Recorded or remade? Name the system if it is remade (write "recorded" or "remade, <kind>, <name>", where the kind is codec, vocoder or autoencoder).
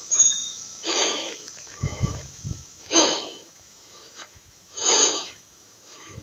remade, autoencoder, DAC-VAE